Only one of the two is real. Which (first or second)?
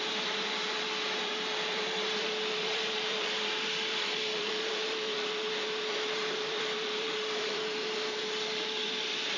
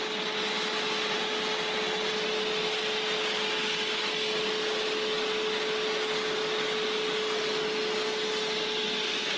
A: second